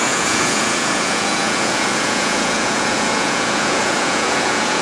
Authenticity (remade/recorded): remade